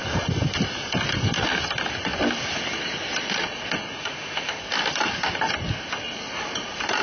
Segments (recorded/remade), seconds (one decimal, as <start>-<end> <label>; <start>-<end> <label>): 0.0-4.0 recorded; 4.0-4.6 remade; 4.6-7.0 recorded